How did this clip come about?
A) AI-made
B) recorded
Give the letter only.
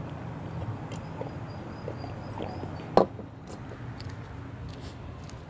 B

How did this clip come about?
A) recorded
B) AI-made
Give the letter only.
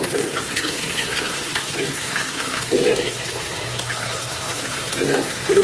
B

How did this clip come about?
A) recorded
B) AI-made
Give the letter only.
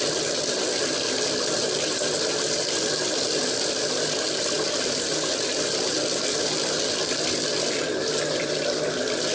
A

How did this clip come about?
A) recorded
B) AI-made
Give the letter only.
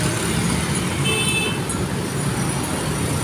A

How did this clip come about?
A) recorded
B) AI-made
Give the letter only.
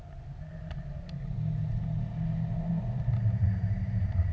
A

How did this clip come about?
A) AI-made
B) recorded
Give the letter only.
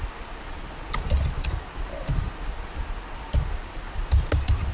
B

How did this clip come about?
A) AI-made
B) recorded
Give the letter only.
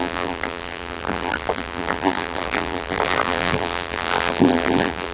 A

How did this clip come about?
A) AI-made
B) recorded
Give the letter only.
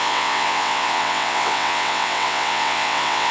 A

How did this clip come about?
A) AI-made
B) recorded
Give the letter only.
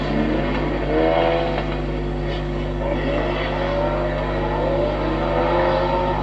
B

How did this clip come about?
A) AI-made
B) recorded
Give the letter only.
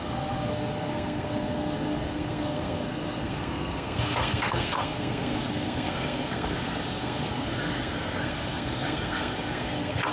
A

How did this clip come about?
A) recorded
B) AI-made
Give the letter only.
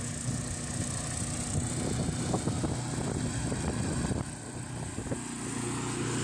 A